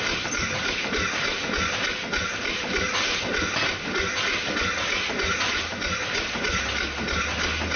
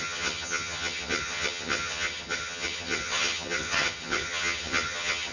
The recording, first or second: first